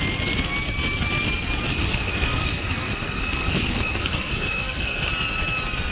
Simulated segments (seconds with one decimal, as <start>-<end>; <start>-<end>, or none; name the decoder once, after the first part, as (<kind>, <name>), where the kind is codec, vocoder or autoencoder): 1.7-5.1 (codec, SNAC)